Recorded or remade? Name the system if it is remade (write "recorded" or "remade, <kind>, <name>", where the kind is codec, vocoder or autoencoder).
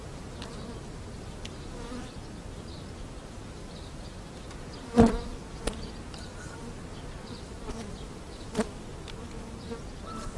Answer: recorded